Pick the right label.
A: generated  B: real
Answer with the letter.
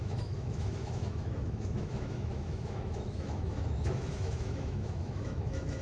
A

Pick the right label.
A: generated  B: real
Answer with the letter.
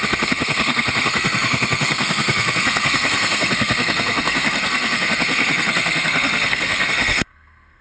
A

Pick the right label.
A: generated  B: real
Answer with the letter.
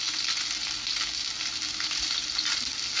B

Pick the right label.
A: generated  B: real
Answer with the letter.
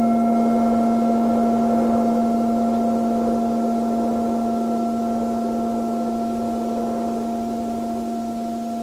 B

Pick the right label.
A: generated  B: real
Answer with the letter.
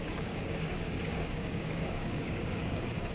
A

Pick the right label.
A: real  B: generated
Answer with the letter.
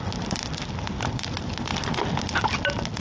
A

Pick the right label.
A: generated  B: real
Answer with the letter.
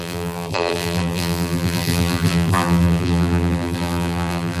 A